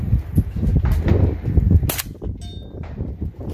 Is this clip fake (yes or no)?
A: no